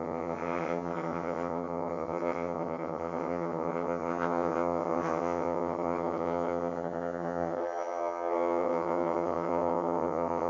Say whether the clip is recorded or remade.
remade